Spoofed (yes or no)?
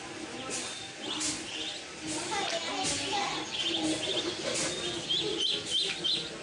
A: no